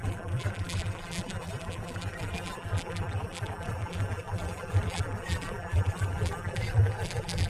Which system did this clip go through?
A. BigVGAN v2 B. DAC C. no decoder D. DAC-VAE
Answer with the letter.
A